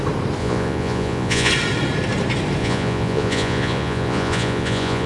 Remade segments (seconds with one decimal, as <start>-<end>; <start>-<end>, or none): 0.4-1.5; 2.6-5.1